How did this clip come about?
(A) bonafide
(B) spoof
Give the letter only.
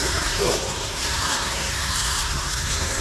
B